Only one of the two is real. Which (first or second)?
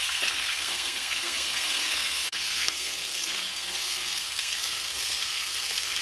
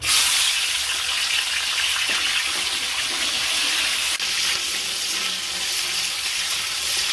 second